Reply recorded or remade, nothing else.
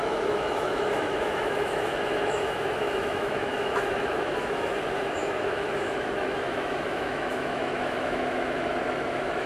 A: remade